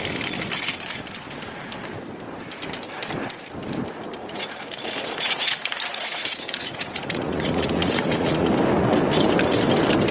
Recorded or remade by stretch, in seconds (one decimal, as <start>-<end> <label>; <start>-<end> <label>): 0.0-4.2 recorded; 4.2-8.5 remade; 8.5-10.1 recorded